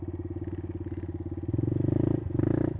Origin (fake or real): real